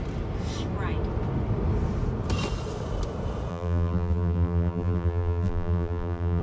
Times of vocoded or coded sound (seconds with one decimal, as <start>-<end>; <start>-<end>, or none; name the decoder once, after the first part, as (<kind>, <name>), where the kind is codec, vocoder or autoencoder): 3.5-6.4 (vocoder, BigVGAN v2)